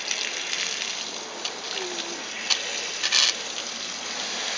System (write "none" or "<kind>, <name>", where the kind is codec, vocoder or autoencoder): none